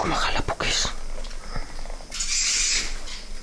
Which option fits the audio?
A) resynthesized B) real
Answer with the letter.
B